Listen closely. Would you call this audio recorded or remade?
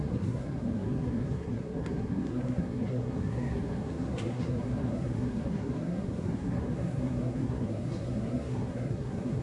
remade